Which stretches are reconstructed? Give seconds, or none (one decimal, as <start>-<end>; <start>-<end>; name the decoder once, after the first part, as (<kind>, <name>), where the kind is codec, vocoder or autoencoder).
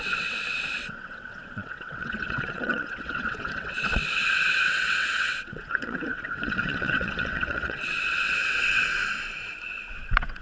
0.0-9.0 (vocoder, WaveNeXt); 9.9-10.4